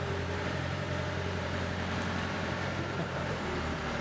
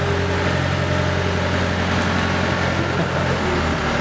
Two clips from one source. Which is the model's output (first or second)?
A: first